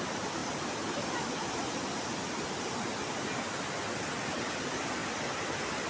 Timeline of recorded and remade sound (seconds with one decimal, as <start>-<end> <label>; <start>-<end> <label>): 0.0-5.9 recorded